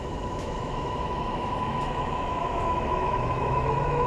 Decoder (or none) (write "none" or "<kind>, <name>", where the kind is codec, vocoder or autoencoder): autoencoder, DAC-VAE